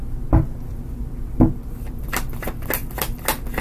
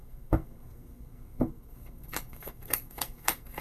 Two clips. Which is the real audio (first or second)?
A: first